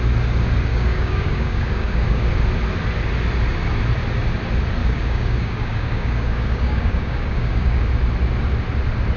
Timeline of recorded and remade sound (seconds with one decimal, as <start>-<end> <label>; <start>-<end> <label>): 0.0-0.7 recorded; 0.7-2.3 remade; 2.3-4.8 recorded; 4.8-7.8 remade; 7.8-9.2 recorded

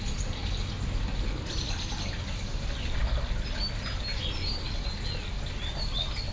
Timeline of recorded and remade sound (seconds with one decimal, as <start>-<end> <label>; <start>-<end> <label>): 0.0-6.3 recorded

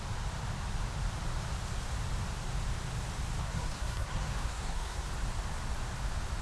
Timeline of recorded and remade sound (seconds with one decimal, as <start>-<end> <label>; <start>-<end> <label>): 0.0-3.4 recorded; 3.4-5.1 remade; 5.1-6.4 recorded

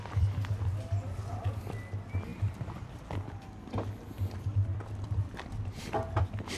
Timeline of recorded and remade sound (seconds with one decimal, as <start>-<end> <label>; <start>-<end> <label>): 0.0-2.3 recorded; 2.3-3.0 remade; 3.0-6.6 recorded

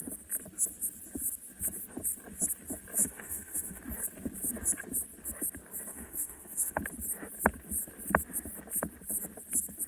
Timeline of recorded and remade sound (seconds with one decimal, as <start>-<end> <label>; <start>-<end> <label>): 0.0-3.0 recorded; 3.0-3.8 remade; 3.8-5.9 recorded; 5.9-6.8 remade; 6.8-9.9 recorded

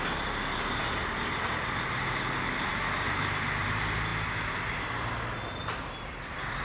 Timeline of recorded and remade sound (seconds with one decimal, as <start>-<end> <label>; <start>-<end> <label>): 0.0-2.7 recorded; 2.7-3.4 remade; 3.4-6.6 recorded

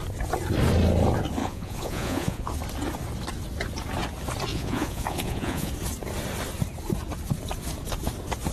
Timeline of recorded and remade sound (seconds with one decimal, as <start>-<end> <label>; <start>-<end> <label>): 0.0-1.4 recorded; 1.4-2.5 remade; 2.5-4.5 recorded; 4.5-5.7 remade; 5.7-8.5 recorded